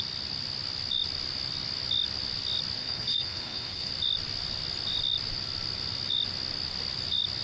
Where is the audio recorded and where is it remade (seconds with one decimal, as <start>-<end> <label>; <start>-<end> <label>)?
0.0-2.8 recorded; 2.8-3.9 remade; 3.9-7.4 recorded